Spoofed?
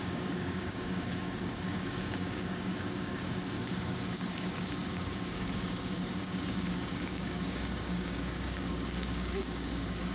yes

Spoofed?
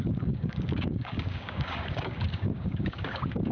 yes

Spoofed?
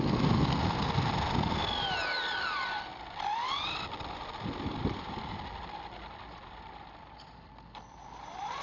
no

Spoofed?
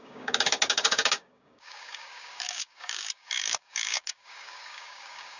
yes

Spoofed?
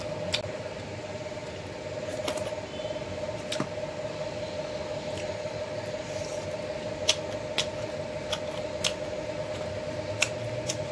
no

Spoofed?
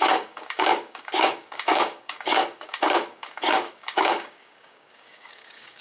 yes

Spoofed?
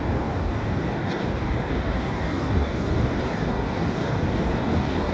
yes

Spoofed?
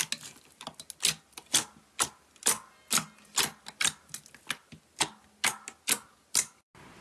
no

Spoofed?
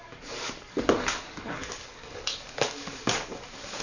yes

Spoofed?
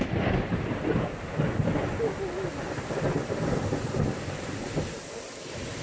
no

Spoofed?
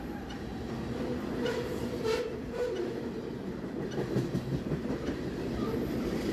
no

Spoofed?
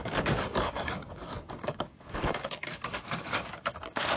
yes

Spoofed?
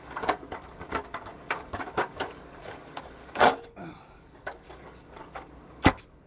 yes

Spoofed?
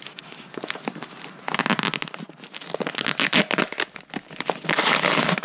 no